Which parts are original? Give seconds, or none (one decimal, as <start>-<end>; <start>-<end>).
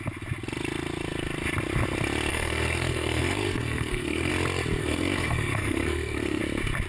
0.0-2.3; 4.3-4.8; 6.4-6.9